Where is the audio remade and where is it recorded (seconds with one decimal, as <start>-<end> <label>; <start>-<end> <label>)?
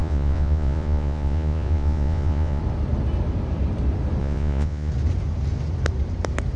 0.0-2.6 remade; 2.6-4.2 recorded; 4.2-4.9 remade; 4.9-6.6 recorded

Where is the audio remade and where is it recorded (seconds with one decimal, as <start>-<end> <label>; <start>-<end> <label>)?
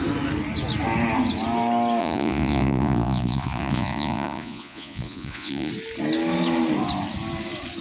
0.0-2.0 recorded; 2.0-5.7 remade; 5.7-7.8 recorded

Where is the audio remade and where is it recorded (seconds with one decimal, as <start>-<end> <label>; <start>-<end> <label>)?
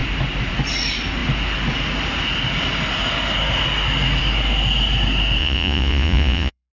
0.0-5.4 recorded; 5.4-6.7 remade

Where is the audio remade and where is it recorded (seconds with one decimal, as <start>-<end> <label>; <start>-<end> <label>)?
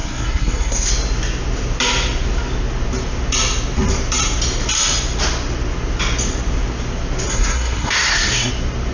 0.0-0.9 remade; 0.9-7.3 recorded; 7.3-8.5 remade; 8.5-8.9 recorded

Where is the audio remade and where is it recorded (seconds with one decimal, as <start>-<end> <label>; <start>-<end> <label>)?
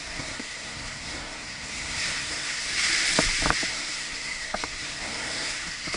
0.0-2.7 remade; 2.7-3.7 recorded; 3.7-6.0 remade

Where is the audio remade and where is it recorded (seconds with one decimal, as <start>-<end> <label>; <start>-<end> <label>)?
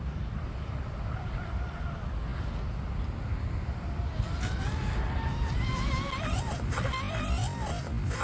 0.0-8.2 recorded